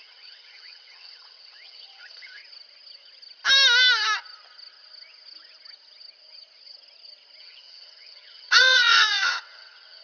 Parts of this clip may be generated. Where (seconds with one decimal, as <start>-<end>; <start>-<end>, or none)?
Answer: 0.0-2.4; 7.4-10.0